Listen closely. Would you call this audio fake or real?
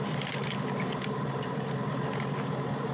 real